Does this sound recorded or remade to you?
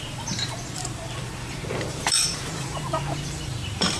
remade